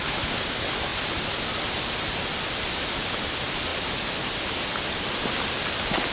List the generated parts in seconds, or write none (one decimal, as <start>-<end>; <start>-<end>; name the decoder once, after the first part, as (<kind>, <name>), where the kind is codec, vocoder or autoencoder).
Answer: 0.9-2.3 (vocoder, BigVGAN v2); 3.7-4.5